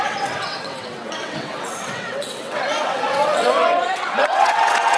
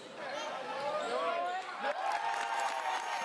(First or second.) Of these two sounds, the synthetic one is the first